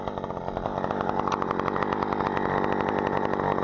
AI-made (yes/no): no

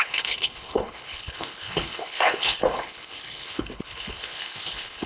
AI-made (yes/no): yes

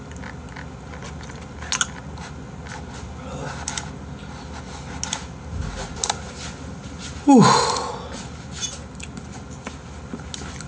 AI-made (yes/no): no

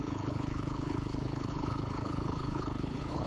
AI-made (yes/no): yes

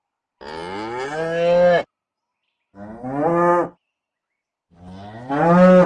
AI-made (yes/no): no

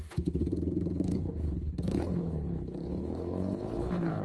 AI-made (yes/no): yes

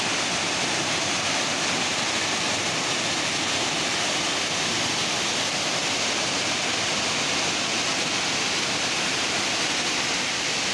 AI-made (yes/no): no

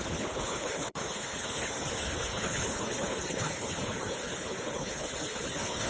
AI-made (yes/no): yes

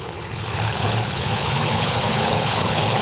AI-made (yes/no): yes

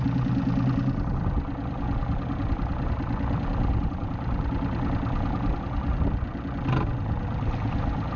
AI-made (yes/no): no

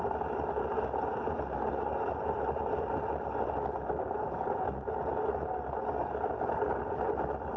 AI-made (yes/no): no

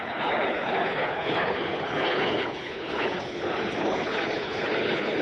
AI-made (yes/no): yes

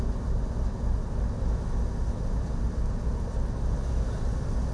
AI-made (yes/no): no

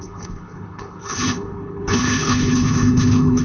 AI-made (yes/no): yes